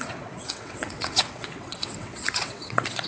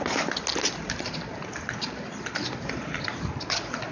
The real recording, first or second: second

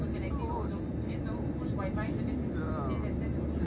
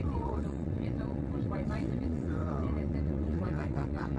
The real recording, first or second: first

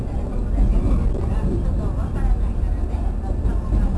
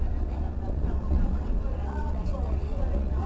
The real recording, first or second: first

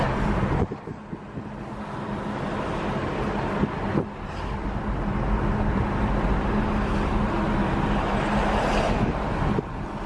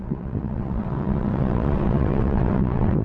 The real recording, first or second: first